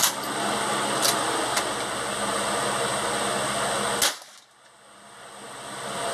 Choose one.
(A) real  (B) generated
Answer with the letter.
A